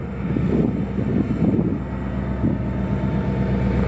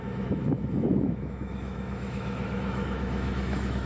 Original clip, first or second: first